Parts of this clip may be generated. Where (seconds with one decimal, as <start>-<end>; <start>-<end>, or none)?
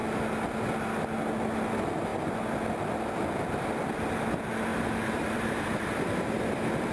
4.7-6.9